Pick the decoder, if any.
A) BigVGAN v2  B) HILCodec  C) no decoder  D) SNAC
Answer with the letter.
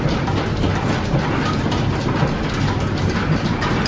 C